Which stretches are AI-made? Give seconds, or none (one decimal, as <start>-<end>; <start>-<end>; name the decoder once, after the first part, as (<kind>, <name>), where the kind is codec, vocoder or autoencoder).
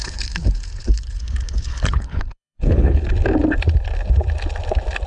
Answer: 0.0-3.1 (codec, HILCodec)